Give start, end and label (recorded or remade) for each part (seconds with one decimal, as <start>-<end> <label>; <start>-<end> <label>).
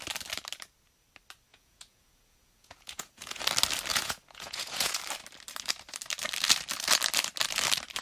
0.0-1.5 recorded; 1.5-3.4 remade; 3.4-3.9 recorded; 3.9-5.0 remade; 5.0-8.0 recorded